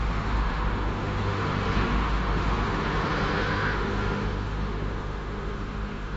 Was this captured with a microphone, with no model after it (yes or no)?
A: no